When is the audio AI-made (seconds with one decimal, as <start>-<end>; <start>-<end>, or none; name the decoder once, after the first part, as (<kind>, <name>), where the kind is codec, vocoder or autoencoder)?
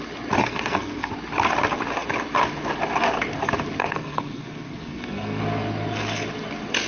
0.4-1.1 (codec, SNAC); 3.8-5.4